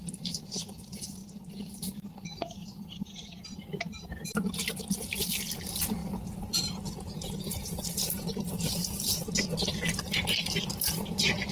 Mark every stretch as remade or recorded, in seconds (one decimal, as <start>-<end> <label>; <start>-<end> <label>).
0.0-1.2 remade; 1.2-1.7 recorded; 1.7-9.2 remade; 9.2-10.6 recorded; 10.6-11.5 remade

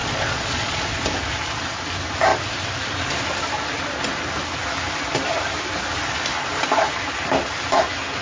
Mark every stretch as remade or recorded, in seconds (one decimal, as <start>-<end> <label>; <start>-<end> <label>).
0.0-1.0 remade; 1.0-8.2 recorded